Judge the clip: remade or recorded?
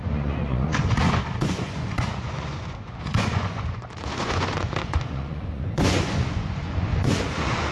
remade